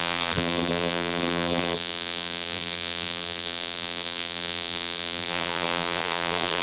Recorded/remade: remade